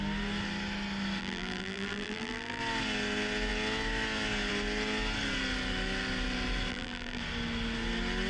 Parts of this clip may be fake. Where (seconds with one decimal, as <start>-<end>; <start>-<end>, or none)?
1.2-2.6; 6.7-7.2